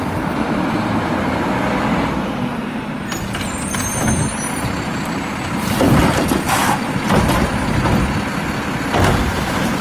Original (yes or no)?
yes